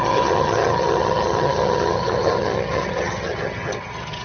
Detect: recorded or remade remade